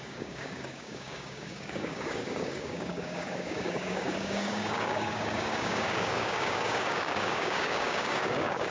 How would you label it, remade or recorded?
remade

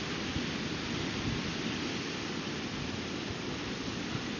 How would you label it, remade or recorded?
recorded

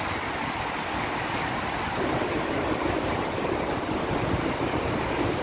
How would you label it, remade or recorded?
recorded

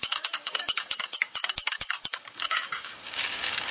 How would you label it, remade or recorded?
remade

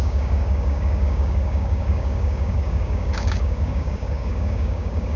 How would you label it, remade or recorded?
remade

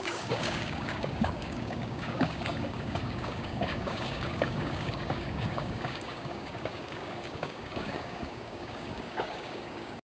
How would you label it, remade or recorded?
remade